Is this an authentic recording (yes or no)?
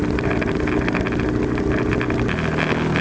yes